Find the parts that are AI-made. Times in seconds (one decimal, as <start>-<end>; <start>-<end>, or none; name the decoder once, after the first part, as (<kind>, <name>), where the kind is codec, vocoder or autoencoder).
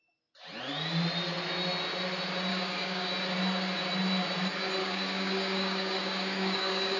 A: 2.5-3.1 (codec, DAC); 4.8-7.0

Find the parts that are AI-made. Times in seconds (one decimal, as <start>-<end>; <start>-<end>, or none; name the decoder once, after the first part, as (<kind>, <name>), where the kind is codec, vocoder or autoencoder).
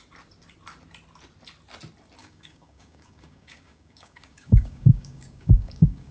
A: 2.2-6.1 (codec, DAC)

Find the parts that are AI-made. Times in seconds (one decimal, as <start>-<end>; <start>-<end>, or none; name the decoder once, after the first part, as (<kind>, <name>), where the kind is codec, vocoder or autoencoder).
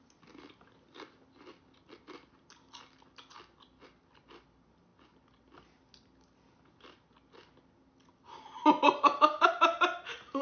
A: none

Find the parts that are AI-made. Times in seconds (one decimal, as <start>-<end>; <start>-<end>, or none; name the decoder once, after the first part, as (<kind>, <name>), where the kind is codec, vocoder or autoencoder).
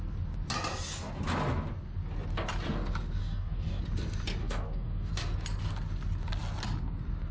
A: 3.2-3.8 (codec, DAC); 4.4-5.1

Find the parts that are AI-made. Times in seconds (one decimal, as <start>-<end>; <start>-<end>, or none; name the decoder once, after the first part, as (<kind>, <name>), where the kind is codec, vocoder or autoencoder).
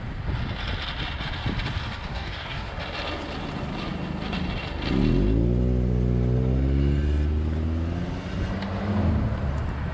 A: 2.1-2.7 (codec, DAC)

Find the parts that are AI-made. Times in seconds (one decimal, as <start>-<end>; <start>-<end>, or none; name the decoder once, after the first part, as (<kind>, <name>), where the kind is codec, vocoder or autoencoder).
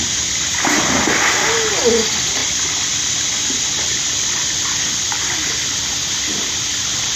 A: none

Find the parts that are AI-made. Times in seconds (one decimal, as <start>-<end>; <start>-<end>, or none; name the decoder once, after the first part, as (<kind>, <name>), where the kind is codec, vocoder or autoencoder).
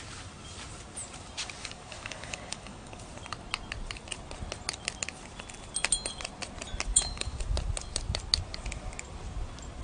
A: 1.6-3.0 (codec, DAC); 6.9-7.4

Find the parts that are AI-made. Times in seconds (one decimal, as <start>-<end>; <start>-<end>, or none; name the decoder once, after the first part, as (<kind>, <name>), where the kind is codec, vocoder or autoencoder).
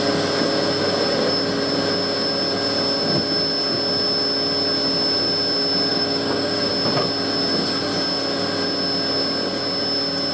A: 5.9-6.7 (codec, DAC)